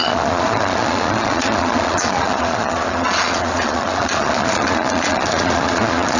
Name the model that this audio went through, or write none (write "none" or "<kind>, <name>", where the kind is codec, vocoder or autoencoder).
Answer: vocoder, Vocos